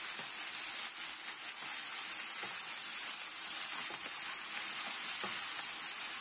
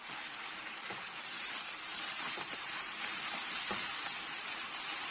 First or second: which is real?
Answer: first